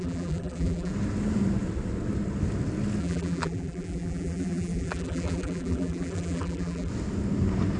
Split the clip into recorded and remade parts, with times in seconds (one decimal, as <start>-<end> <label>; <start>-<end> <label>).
0.0-0.9 remade; 0.9-3.0 recorded; 3.0-6.9 remade; 6.9-7.8 recorded